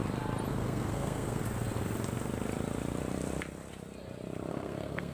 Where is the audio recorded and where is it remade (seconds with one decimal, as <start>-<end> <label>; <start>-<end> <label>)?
0.0-0.5 recorded; 0.5-1.4 remade; 1.4-4.5 recorded; 4.5-5.1 remade